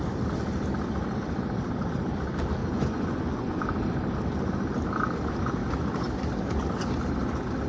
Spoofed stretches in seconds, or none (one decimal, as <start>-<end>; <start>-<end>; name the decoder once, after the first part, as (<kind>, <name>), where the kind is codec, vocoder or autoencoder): 2.6-3.6 (vocoder, Vocos)